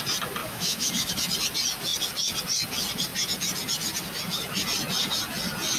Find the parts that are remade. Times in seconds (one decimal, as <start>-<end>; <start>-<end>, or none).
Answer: 0.4-1.1